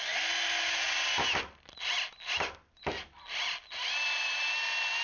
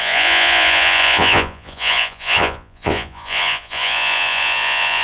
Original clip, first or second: first